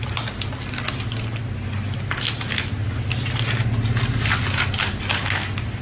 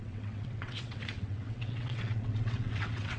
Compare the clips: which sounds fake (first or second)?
second